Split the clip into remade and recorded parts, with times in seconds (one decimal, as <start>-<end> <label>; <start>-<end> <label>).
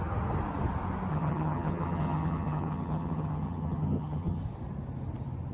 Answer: 0.0-1.1 recorded; 1.1-4.4 remade; 4.4-5.5 recorded